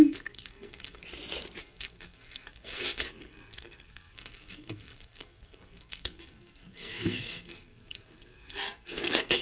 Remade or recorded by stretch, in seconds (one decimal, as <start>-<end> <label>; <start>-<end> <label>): 0.0-1.0 remade; 1.0-1.6 recorded; 1.6-9.4 remade